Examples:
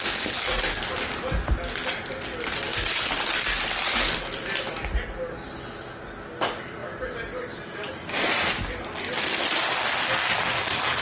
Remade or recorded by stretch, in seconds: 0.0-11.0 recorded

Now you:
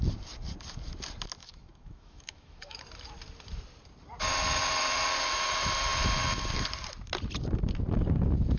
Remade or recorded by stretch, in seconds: 0.0-1.4 recorded; 1.4-2.8 remade; 2.8-8.6 recorded

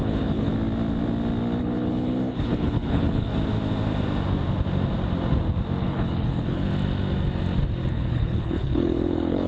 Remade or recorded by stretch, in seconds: 0.0-0.5 remade; 0.5-1.6 recorded; 1.6-3.3 remade; 3.3-5.8 recorded; 5.8-6.7 remade; 6.7-7.9 recorded; 7.9-9.5 remade

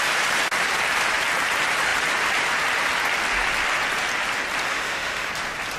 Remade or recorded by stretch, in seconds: 0.0-4.7 recorded; 4.7-5.3 remade; 5.3-5.8 recorded